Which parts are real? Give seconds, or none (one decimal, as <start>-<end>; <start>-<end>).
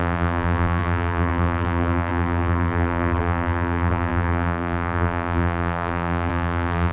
none